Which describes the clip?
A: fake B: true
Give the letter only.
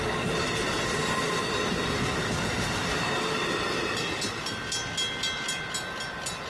B